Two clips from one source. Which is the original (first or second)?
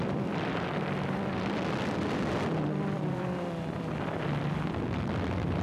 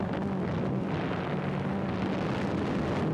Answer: second